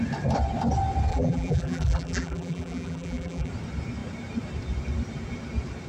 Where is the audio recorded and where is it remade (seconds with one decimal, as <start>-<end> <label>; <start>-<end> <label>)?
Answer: 0.0-1.1 recorded; 1.1-3.5 remade; 3.5-5.9 recorded